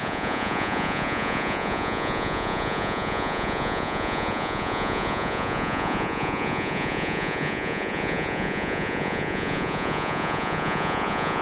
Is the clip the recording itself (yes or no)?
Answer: no